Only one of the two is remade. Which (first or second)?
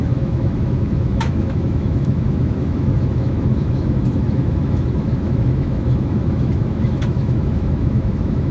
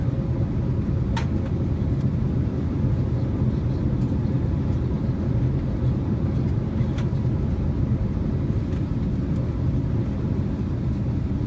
first